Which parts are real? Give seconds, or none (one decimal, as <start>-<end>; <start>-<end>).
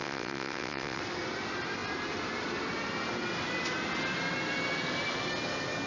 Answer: 1.0-5.9